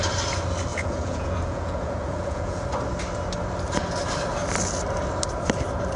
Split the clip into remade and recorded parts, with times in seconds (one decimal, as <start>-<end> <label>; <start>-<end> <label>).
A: 0.0-0.7 recorded; 0.7-2.6 remade; 2.6-6.0 recorded